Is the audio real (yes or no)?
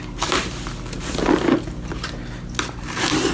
yes